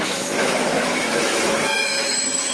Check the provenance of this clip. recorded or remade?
remade